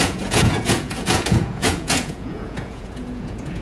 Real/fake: fake